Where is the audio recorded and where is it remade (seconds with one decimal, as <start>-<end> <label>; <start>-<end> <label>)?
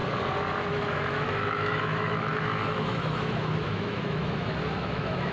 0.0-0.7 recorded; 0.7-5.3 remade